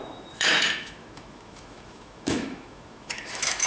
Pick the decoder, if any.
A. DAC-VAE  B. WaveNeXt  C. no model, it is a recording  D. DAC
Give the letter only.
A